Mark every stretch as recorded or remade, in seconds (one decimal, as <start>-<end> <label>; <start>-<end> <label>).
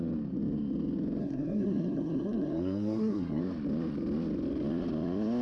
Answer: 0.0-1.2 recorded; 1.2-3.4 remade; 3.4-5.4 recorded